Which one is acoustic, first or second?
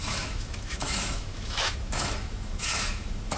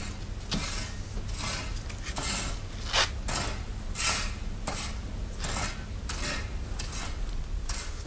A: second